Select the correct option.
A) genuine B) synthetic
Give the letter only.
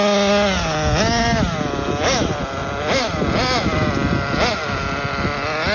A